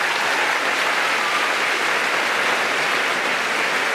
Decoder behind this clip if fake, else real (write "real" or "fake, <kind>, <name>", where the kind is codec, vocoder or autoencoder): real